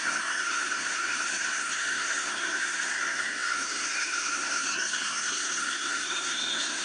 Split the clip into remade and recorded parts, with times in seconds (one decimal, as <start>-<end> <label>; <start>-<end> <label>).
0.0-6.8 remade